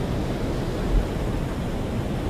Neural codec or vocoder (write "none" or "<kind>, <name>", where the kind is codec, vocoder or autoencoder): none